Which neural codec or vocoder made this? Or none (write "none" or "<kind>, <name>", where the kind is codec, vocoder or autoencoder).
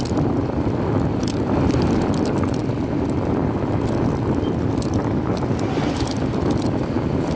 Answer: none